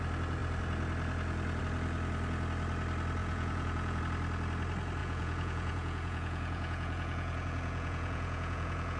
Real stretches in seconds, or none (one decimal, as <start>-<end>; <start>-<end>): 0.0-3.2; 4.0-5.0